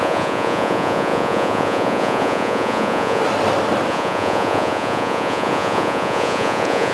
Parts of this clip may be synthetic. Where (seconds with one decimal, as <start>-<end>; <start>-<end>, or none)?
0.0-3.2; 3.9-6.9